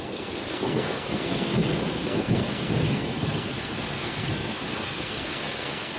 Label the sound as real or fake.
fake